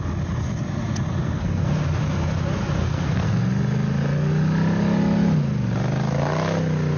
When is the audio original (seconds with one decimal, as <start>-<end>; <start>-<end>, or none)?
0.0-1.2; 1.7-2.8; 3.5-7.0